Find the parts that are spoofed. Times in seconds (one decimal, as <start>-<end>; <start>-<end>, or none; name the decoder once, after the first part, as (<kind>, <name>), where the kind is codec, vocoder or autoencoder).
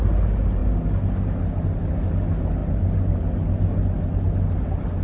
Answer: none